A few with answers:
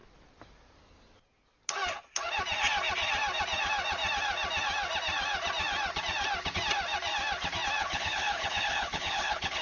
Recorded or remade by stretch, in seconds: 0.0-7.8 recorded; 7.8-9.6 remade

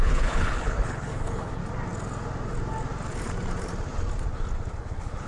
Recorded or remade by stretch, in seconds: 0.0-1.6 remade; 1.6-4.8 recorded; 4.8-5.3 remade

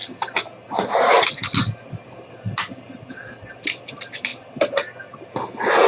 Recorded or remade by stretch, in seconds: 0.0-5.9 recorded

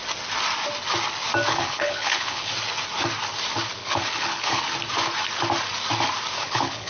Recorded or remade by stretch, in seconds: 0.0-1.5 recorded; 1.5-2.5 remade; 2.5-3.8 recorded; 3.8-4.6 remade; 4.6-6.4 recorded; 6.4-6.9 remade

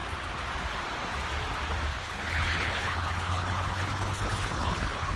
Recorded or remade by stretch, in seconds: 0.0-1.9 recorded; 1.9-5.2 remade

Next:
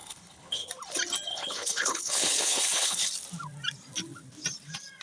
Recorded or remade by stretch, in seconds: 0.0-0.7 remade; 0.7-1.3 recorded; 1.3-3.1 remade; 3.1-5.0 recorded

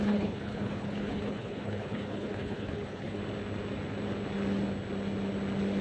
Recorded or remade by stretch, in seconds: 0.0-3.2 remade; 3.2-5.8 recorded

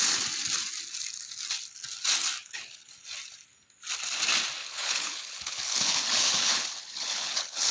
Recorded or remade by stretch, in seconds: 0.0-2.4 recorded; 2.4-2.9 remade; 2.9-4.6 recorded; 4.6-7.7 remade